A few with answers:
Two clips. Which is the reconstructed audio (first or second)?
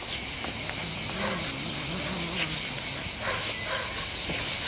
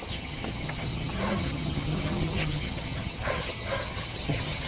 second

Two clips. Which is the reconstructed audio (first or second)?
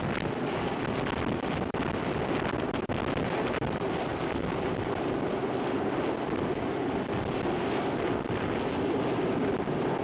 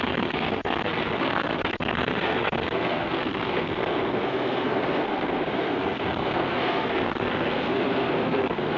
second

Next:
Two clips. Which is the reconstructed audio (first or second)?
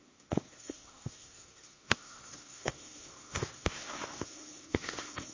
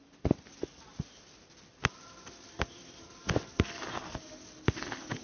first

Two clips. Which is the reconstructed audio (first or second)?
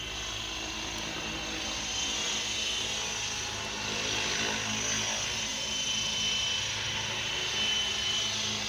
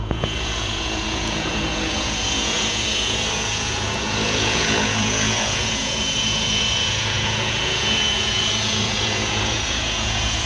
second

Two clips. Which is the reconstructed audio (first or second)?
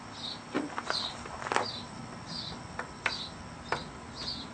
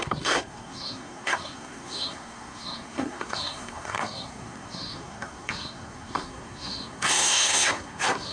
second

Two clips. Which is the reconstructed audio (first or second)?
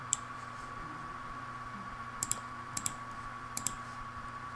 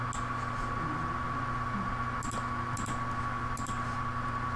first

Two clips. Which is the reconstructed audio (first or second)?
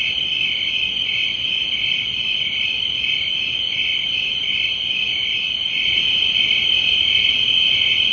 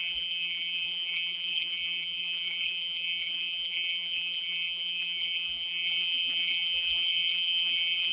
second